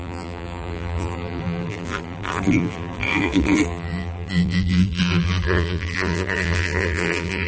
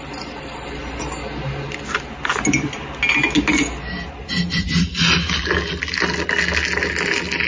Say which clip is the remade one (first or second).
first